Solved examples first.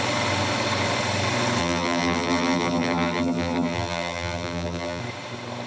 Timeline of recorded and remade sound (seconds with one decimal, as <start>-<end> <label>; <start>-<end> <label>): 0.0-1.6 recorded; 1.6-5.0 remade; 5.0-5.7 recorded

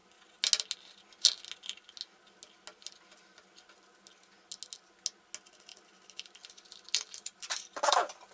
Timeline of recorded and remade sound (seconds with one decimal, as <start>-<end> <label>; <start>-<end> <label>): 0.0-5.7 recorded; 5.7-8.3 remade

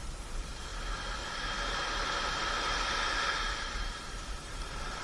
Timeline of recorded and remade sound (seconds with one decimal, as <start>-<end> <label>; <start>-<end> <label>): 0.0-0.7 remade; 0.7-3.6 recorded; 3.6-5.0 remade